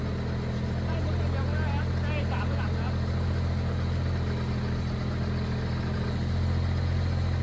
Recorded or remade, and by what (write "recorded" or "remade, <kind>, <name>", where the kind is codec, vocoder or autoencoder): recorded